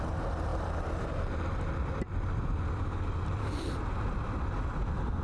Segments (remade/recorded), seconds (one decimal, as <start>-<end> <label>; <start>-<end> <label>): 0.0-5.2 recorded